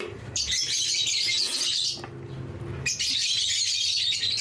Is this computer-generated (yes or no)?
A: no